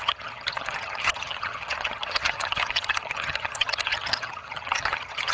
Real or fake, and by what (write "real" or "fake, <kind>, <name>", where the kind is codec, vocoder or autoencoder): fake, vocoder, HiFi-GAN